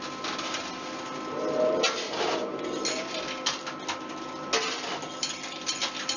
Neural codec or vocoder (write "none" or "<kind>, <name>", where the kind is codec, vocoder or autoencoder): none